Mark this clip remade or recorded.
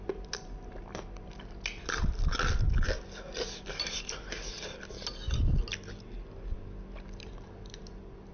recorded